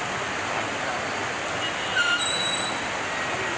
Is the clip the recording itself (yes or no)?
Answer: yes